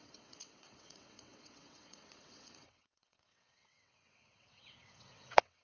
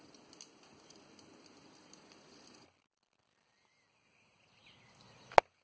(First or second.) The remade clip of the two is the first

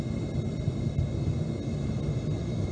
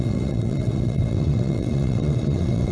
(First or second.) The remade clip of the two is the second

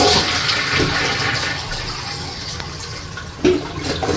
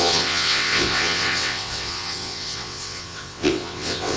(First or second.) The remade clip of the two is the second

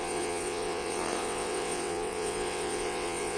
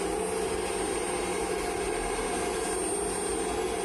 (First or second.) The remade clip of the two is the first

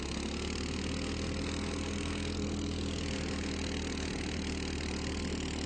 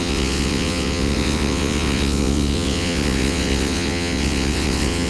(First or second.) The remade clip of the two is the second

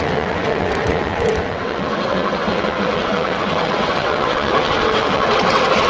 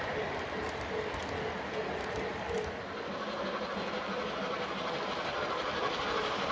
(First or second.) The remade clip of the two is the first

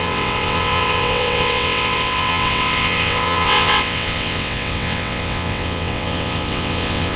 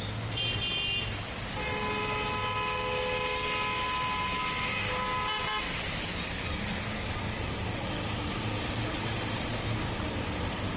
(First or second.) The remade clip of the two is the first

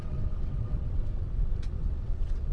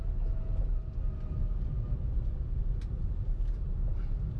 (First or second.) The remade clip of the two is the first